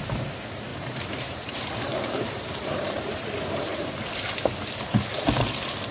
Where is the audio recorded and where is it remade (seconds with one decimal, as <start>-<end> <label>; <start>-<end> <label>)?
0.0-0.7 recorded; 0.7-3.3 remade; 3.3-5.9 recorded